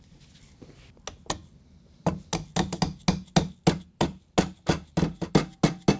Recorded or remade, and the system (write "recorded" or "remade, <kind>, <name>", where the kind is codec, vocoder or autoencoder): recorded